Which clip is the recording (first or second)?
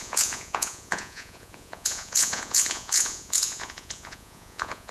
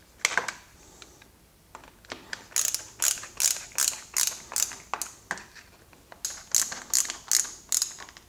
second